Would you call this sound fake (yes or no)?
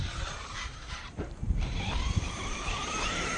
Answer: yes